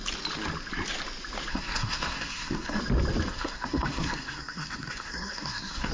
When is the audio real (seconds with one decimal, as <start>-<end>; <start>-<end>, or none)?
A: 0.0-1.5; 2.8-3.3